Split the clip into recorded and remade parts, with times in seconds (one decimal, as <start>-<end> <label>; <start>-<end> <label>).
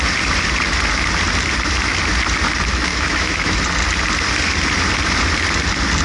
0.0-2.9 recorded; 2.9-3.6 remade; 3.6-6.0 recorded